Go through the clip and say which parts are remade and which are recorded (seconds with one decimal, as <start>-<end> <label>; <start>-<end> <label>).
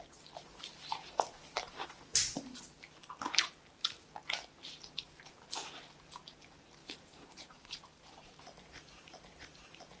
0.0-6.8 recorded; 6.8-8.4 remade; 8.4-10.0 recorded